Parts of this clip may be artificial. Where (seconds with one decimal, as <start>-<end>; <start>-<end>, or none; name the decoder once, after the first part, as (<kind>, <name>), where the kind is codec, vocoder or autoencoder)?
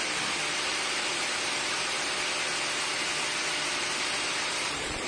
0.7-2.1 (vocoder, BigVGAN v2); 3.4-5.1